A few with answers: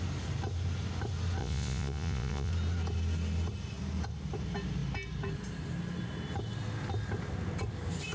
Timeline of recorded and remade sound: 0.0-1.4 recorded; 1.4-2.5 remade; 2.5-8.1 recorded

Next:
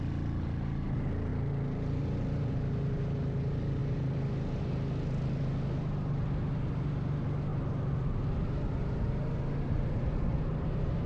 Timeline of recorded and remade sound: 0.0-11.1 recorded

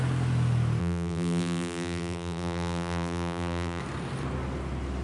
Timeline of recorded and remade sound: 0.0-0.8 recorded; 0.8-3.8 remade; 3.8-5.0 recorded

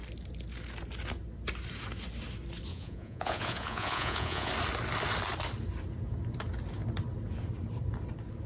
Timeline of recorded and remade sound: 0.0-2.7 recorded; 2.7-4.5 remade; 4.5-8.5 recorded

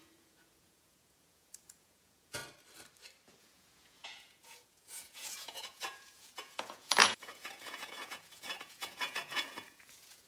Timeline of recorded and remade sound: 0.0-2.4 remade; 2.4-3.4 recorded; 3.4-10.3 remade

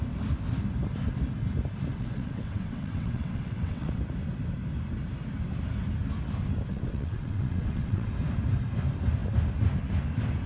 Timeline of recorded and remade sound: 0.0-1.9 recorded; 1.9-4.0 remade; 4.0-6.7 recorded; 6.7-8.1 remade; 8.1-10.5 recorded

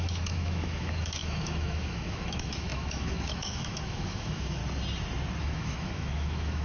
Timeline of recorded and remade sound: 0.0-4.6 remade; 4.6-5.4 recorded; 5.4-6.6 remade

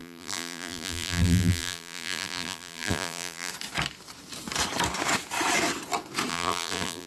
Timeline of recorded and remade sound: 0.0-3.5 remade; 3.5-6.3 recorded; 6.3-7.1 remade